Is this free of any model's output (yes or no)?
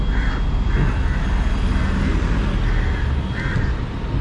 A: yes